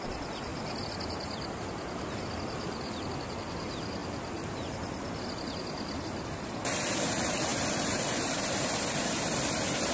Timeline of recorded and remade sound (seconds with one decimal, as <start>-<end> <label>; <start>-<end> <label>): 0.0-0.5 recorded; 0.5-1.7 remade; 1.7-7.5 recorded; 7.5-8.5 remade; 8.5-9.9 recorded